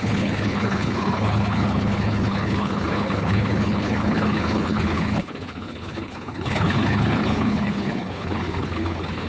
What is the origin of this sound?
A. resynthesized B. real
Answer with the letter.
A